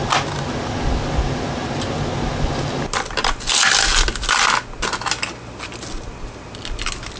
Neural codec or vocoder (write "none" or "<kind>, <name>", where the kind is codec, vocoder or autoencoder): none